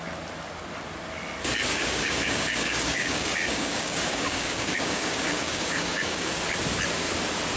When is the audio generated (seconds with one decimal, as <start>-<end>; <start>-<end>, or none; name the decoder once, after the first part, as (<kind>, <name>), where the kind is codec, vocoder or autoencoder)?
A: 1.7-6.3 (codec, DAC)